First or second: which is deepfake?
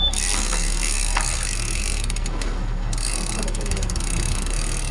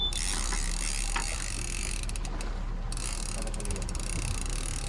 first